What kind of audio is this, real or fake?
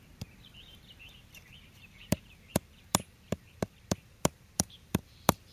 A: fake